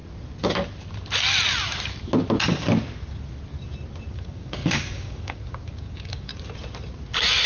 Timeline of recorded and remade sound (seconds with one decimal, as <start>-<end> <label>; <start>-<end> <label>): 0.0-4.1 recorded; 4.1-6.3 remade; 6.3-7.5 recorded